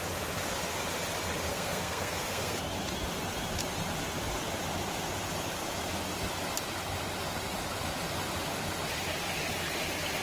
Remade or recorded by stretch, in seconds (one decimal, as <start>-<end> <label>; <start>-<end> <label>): 0.0-1.5 recorded; 1.5-2.6 remade; 2.6-10.2 recorded